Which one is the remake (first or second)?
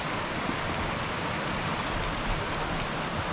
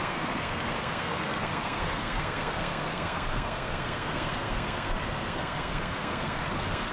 second